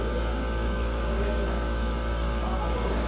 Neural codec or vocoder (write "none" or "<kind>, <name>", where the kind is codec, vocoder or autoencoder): codec, DAC